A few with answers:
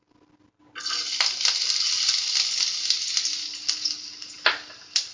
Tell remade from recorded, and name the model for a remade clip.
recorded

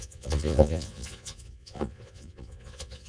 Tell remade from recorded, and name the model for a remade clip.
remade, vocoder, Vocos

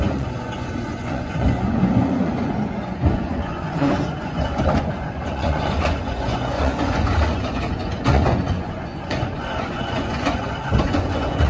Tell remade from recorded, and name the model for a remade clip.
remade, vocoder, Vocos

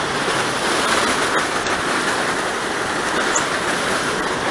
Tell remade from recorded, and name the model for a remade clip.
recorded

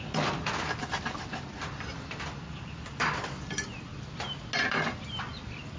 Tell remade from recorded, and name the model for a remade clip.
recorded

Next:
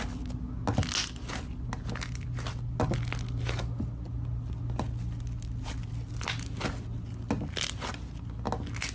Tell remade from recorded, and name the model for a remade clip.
recorded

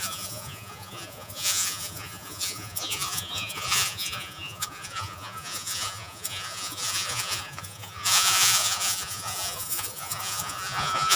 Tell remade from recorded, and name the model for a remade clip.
remade, vocoder, Vocos